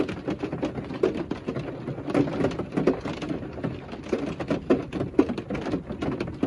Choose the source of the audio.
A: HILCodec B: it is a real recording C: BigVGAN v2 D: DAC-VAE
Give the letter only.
B